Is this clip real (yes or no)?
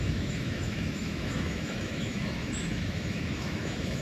no